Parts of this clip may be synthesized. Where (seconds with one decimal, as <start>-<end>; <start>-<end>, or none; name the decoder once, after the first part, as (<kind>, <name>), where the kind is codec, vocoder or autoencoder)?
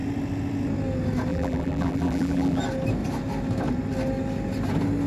1.3-2.6 (vocoder, BigVGAN v2)